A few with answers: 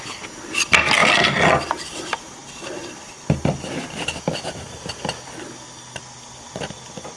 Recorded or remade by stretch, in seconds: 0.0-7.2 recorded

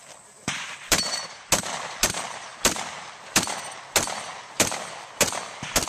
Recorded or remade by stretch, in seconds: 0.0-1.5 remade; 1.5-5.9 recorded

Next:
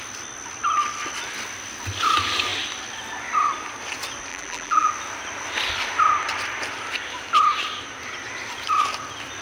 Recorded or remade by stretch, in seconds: 0.0-4.3 recorded; 4.3-4.9 remade; 4.9-9.4 recorded

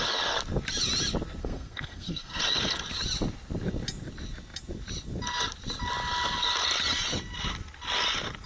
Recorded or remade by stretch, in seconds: 0.0-1.4 recorded; 1.4-2.4 remade; 2.4-8.5 recorded